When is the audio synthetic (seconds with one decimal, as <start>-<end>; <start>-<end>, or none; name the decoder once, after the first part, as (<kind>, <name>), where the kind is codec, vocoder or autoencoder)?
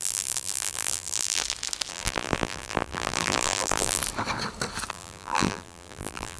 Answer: 0.0-1.4 (vocoder, BigVGAN v2); 1.9-4.0; 4.9-6.4